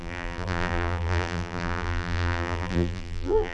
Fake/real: fake